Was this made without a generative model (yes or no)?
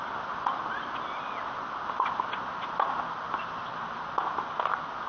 yes